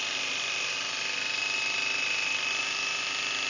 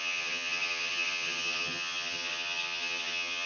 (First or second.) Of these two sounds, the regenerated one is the second